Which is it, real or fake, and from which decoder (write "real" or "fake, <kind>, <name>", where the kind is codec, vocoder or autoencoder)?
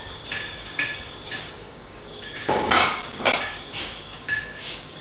fake, codec, DAC